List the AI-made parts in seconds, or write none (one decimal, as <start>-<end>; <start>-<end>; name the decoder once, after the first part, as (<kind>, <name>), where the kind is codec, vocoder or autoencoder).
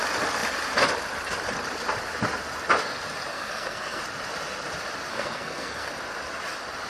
3.3-4.0 (codec, SNAC); 5.1-5.9